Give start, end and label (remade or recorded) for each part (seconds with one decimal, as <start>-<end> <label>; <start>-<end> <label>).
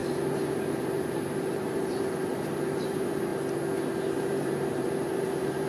0.0-3.3 remade; 3.3-4.2 recorded; 4.2-5.7 remade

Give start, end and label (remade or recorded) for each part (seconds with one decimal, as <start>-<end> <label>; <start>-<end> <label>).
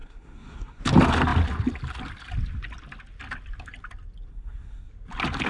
0.0-0.8 remade; 0.8-4.3 recorded; 4.3-4.9 remade; 4.9-5.5 recorded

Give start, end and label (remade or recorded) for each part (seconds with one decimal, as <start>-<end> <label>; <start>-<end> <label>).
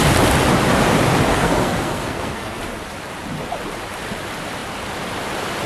0.0-1.3 recorded; 1.3-2.6 remade; 2.6-5.7 recorded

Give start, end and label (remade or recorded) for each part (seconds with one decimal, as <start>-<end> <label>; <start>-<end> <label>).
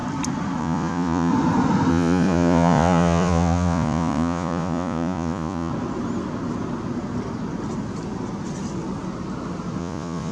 0.0-0.6 recorded; 0.6-1.3 remade; 1.3-1.9 recorded; 1.9-5.7 remade; 5.7-9.8 recorded; 9.8-10.3 remade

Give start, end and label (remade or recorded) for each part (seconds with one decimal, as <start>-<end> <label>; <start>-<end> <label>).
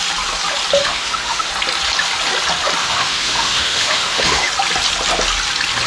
0.0-0.8 recorded; 0.8-1.5 remade; 1.5-2.8 recorded; 2.8-4.5 remade; 4.5-5.9 recorded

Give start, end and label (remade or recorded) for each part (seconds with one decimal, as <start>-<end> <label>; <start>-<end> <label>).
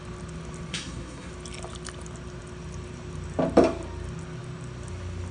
0.0-0.7 recorded; 0.7-1.3 remade; 1.3-5.3 recorded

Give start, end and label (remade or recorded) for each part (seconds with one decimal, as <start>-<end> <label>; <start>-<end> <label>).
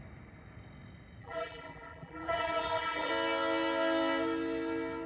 0.0-1.2 recorded; 1.2-3.1 remade; 3.1-5.1 recorded